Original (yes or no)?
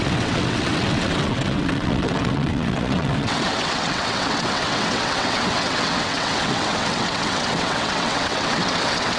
no